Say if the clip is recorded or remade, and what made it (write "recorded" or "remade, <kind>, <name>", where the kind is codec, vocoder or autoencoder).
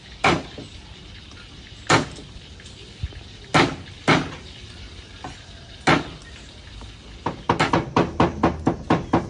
recorded